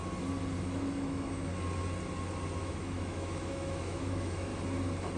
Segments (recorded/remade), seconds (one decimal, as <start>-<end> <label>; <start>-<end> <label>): 0.0-0.6 recorded; 0.6-1.5 remade; 1.5-2.6 recorded; 2.6-4.5 remade; 4.5-5.2 recorded